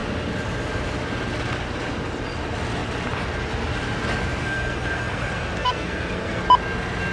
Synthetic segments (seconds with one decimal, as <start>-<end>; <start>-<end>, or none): 4.4-6.4